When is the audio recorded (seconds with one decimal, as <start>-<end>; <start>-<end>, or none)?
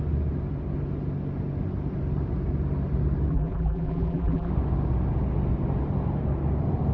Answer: 0.0-3.3; 4.5-6.9